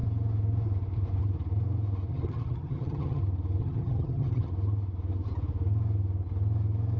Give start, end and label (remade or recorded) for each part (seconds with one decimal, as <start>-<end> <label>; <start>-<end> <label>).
0.0-2.1 recorded; 2.1-3.2 remade; 3.2-3.6 recorded; 3.6-4.5 remade; 4.5-7.0 recorded